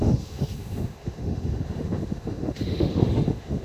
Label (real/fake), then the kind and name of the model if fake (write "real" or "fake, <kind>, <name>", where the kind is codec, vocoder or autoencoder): fake, autoencoder, DAC-VAE